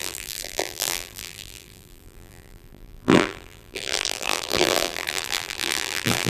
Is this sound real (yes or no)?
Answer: no